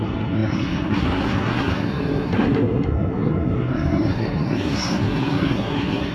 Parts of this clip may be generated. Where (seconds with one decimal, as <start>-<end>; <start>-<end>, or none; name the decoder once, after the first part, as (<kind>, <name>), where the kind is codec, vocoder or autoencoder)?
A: 0.0-6.1 (codec, SNAC)